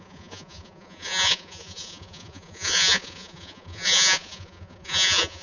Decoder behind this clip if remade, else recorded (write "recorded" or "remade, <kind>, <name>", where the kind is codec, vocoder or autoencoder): remade, vocoder, Vocos